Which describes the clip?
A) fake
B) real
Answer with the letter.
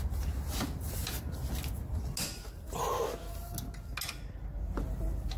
B